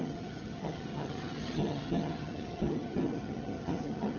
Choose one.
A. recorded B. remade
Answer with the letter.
B